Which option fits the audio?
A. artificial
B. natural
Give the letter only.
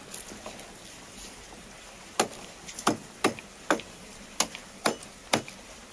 B